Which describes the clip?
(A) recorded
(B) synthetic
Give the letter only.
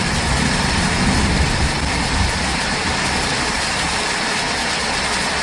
A